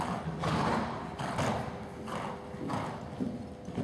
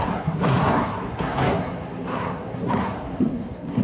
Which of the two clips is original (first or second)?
first